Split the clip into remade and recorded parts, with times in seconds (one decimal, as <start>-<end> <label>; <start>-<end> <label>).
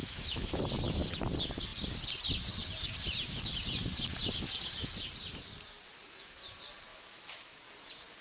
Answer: 0.0-0.6 remade; 0.6-6.9 recorded; 6.9-7.7 remade; 7.7-8.2 recorded